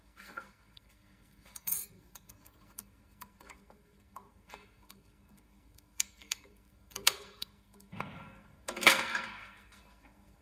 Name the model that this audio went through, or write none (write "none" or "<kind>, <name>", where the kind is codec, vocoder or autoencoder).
codec, SNAC